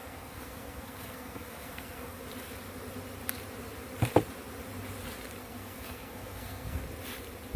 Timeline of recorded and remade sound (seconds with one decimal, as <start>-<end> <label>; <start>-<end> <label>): 0.0-2.2 remade; 2.2-5.4 recorded; 5.4-6.8 remade; 6.8-7.6 recorded